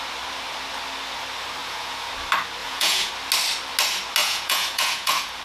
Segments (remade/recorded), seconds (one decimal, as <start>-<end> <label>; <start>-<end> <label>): 0.0-1.6 recorded; 1.6-2.1 remade; 2.1-2.6 recorded; 2.6-3.1 remade; 3.1-4.2 recorded; 4.2-5.4 remade